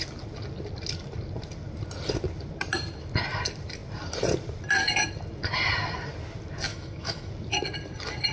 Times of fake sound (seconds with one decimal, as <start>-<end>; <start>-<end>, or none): 6.7-7.3